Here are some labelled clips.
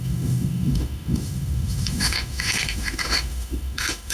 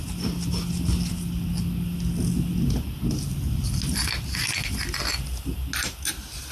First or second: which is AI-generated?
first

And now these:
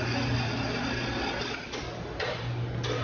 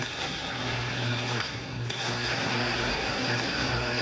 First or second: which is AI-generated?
second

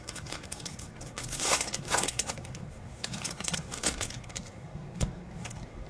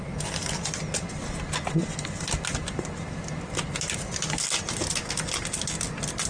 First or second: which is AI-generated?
first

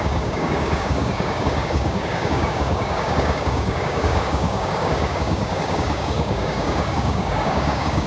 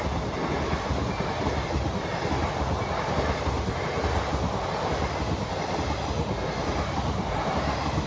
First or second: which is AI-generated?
first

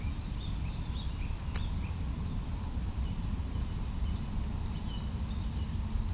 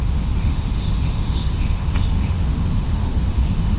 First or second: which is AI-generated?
second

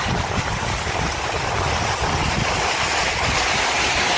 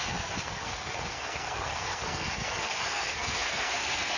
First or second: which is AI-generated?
second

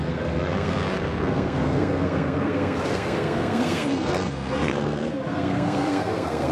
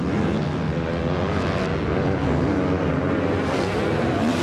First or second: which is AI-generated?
first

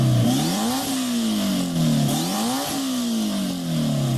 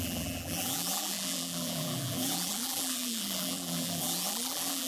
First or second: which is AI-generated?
second